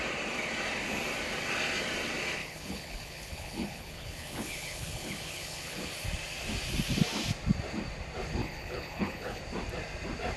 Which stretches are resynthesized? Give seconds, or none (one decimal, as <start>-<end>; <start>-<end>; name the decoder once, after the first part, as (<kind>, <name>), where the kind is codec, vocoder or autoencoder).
2.4-5.9 (codec, HILCodec); 8.4-9.4